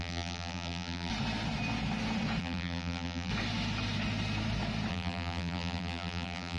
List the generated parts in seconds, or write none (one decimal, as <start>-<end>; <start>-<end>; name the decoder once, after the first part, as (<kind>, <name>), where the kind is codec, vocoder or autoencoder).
0.0-1.1 (vocoder, BigVGAN v2); 2.4-3.3; 4.9-6.6